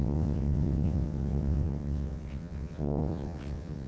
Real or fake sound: fake